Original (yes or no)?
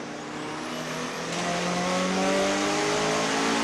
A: yes